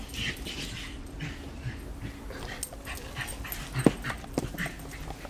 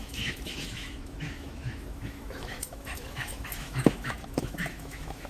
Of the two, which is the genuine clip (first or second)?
first